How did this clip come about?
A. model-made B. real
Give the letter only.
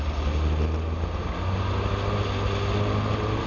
B